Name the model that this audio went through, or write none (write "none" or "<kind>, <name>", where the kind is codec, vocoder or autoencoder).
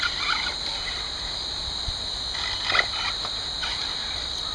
none